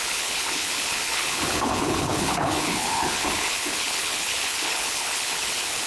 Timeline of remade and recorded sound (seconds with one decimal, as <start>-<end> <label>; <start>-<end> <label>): 0.0-5.9 remade